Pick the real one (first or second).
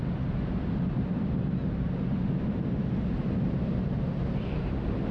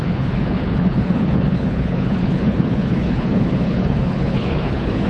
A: first